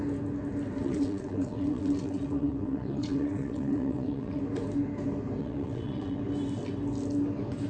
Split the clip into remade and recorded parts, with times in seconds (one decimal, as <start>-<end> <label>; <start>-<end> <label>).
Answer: 0.0-0.8 recorded; 0.8-4.4 remade; 4.4-5.4 recorded; 5.4-6.2 remade; 6.2-7.7 recorded